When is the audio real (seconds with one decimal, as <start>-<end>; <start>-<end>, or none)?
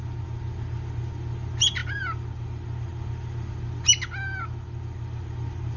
0.0-5.8